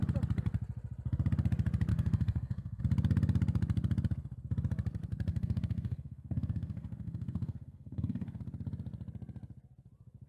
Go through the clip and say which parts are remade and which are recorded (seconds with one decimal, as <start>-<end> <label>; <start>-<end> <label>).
0.0-1.9 recorded; 1.9-2.8 remade; 2.8-5.3 recorded; 5.3-8.4 remade; 8.4-10.3 recorded